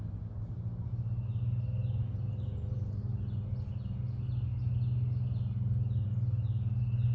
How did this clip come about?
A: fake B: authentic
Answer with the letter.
B